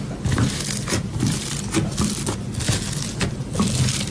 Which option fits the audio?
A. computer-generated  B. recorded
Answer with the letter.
B